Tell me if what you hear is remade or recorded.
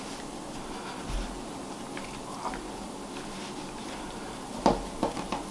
recorded